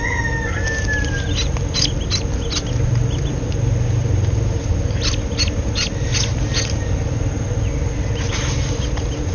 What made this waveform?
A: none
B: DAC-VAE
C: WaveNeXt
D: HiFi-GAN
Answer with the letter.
A